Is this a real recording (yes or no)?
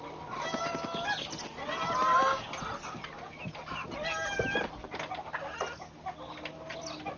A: yes